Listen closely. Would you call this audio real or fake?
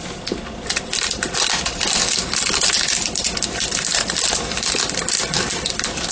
real